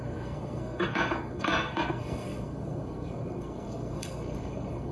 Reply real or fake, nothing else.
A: fake